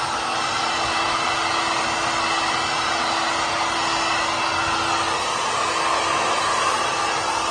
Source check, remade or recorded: recorded